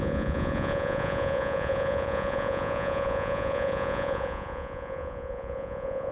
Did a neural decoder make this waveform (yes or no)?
yes